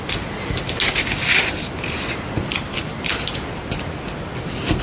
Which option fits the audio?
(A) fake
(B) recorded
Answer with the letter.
B